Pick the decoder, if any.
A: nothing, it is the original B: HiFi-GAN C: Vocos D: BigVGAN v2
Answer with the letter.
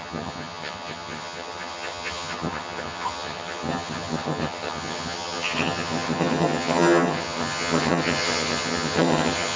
B